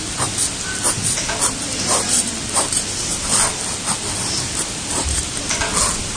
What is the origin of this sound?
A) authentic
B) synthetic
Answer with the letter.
A